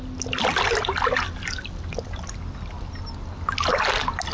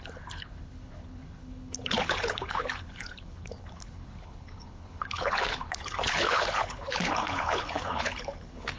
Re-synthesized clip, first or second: second